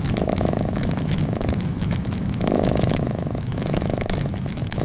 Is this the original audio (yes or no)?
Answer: no